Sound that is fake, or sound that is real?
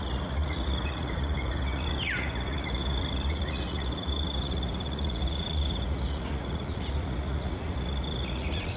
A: fake